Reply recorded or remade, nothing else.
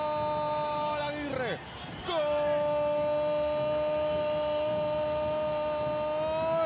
recorded